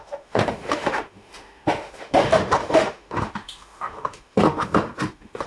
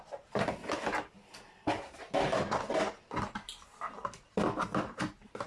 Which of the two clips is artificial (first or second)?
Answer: first